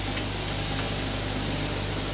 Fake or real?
real